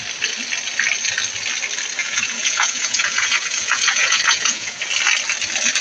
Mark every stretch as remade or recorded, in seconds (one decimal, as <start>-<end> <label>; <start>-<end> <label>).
0.0-2.0 recorded; 2.0-4.8 remade; 4.8-5.8 recorded